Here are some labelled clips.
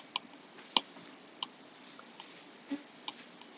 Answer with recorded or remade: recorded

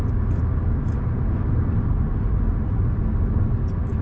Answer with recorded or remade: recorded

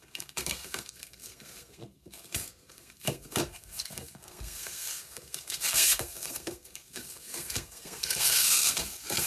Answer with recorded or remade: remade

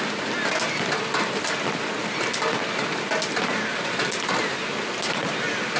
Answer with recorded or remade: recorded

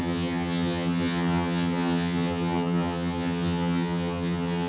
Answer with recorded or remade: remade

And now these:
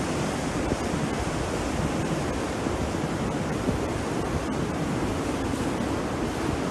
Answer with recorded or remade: recorded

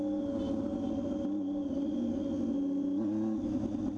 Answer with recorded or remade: recorded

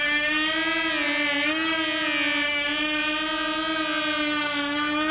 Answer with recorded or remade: recorded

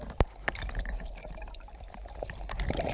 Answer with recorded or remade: remade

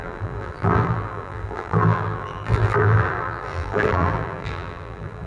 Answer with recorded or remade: remade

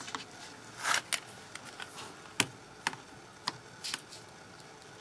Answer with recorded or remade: recorded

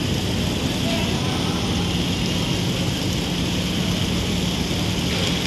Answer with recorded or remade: recorded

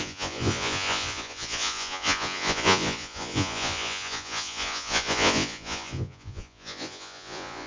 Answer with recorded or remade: remade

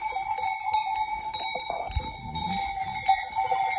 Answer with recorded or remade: recorded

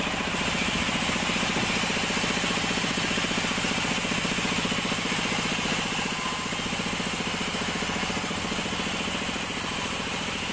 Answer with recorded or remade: recorded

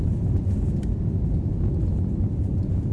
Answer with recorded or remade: recorded